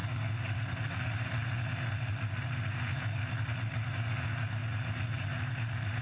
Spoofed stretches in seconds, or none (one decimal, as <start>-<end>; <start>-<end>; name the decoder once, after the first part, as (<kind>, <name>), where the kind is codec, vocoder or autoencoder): none